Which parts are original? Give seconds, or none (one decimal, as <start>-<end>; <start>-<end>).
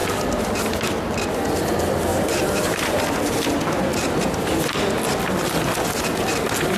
0.0-2.1; 3.0-6.8